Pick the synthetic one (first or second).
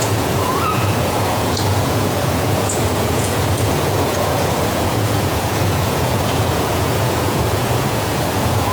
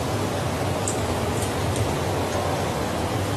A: first